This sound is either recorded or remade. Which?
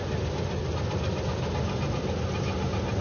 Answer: recorded